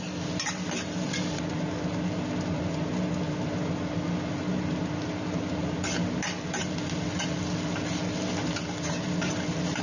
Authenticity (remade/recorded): recorded